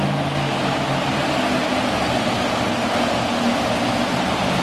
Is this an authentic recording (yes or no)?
yes